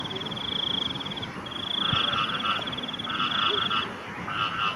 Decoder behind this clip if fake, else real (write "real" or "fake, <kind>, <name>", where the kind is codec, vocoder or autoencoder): real